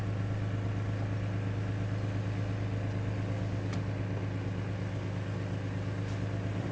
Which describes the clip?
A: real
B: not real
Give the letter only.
A